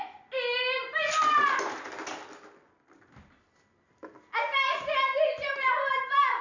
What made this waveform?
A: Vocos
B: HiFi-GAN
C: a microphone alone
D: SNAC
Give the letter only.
C